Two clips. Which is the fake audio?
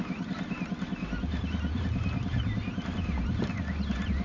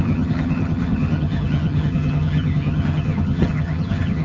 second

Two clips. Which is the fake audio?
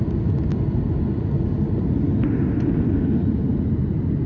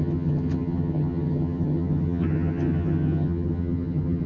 second